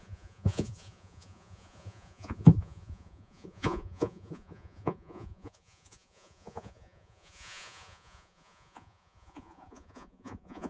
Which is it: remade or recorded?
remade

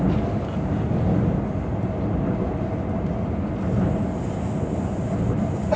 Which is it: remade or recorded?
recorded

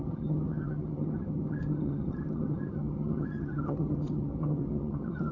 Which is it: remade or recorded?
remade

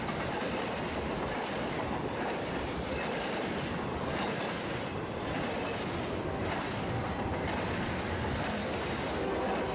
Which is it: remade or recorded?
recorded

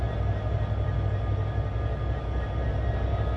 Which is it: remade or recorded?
recorded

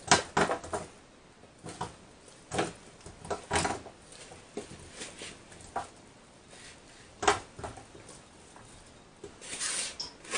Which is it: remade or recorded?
recorded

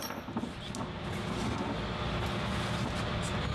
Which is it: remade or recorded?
recorded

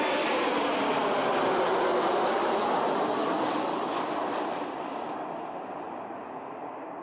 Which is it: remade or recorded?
recorded